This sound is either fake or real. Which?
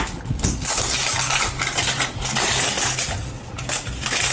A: real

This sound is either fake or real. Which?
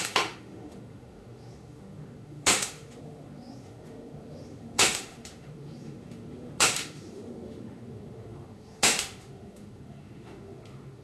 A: fake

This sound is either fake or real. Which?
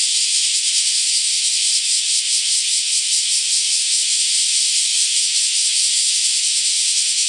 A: fake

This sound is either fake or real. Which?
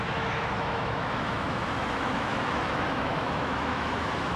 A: fake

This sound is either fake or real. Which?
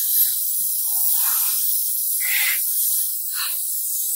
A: real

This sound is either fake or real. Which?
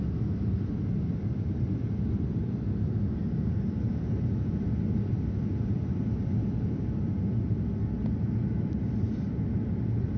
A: real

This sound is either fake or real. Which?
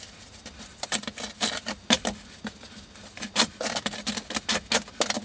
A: real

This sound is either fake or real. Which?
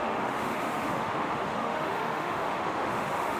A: fake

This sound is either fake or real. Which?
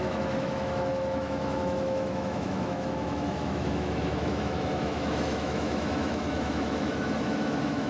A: fake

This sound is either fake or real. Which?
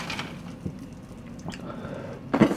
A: real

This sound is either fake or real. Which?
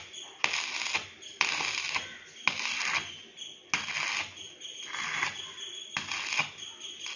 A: real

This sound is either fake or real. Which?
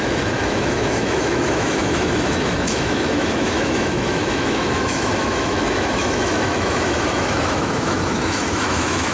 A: fake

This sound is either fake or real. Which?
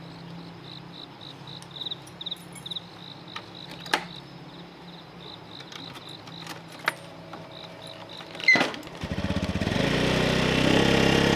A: real